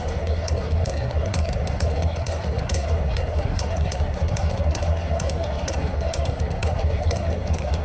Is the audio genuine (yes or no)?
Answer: no